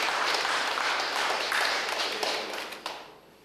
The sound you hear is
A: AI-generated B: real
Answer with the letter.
A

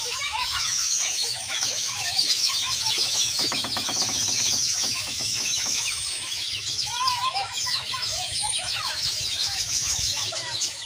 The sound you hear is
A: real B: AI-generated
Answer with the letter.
B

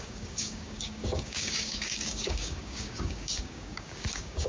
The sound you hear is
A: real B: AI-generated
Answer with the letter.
B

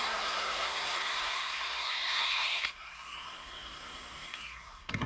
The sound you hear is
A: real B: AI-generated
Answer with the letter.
B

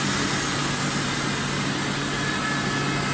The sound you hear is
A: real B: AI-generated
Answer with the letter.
A